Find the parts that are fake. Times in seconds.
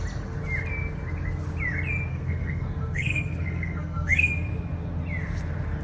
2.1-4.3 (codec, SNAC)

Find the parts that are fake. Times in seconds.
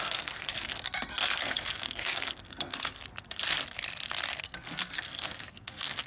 0.0-3.0 (codec, SNAC); 4.4-6.1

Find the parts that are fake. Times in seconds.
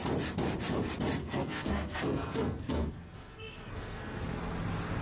1.2-4.2 (codec, SNAC)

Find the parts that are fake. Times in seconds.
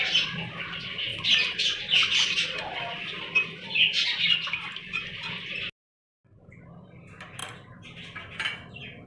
none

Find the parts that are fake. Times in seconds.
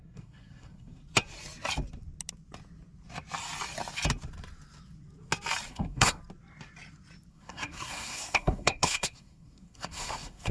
0.0-1.0 (codec, SNAC); 5.7-6.2; 7.3-10.5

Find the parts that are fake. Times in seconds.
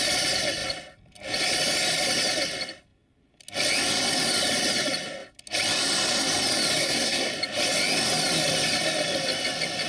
6.8-7.3 (codec, SNAC)